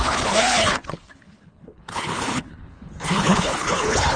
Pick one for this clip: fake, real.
fake